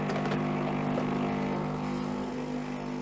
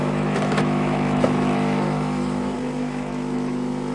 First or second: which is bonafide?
first